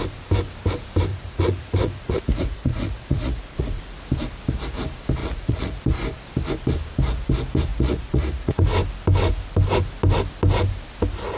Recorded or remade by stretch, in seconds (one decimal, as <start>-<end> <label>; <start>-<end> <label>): 0.0-1.1 recorded; 1.1-3.8 remade; 3.8-5.2 recorded; 5.2-5.8 remade; 5.8-7.7 recorded; 7.7-8.7 remade; 8.7-11.4 recorded